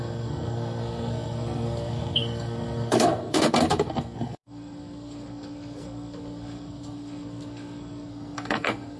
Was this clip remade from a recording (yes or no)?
yes